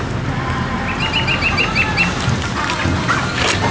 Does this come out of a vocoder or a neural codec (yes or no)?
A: no